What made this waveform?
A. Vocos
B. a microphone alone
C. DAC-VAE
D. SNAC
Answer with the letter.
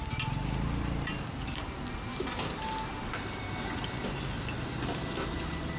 B